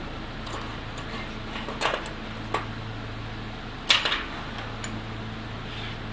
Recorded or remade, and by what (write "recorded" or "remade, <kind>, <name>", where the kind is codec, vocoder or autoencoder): recorded